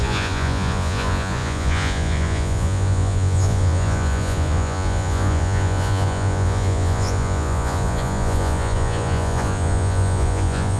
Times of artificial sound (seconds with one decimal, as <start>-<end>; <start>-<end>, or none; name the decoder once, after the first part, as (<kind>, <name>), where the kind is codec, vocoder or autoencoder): 0.0-10.8 (vocoder, Vocos)